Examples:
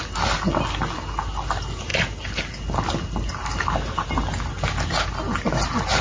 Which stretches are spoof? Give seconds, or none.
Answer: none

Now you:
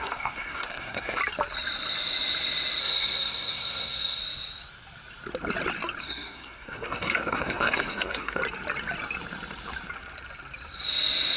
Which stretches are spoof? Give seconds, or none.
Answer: 0.0-1.2 (codec, SNAC); 2.8-4.2; 6.0-8.4

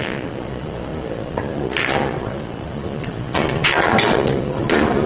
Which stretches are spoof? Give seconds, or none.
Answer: 0.0-5.1 (vocoder, Vocos)

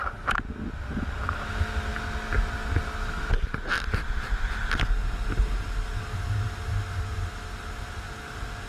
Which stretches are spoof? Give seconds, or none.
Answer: none

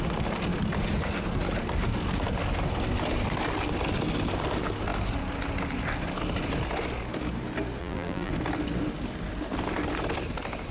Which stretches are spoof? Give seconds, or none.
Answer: 7.8-8.3 (vocoder, BigVGAN v2)